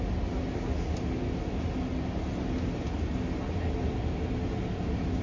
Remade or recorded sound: recorded